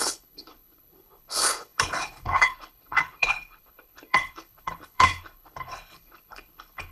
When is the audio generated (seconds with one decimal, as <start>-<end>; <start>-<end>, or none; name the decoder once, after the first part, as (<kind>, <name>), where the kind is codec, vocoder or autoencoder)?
0.0-6.9 (codec, HILCodec)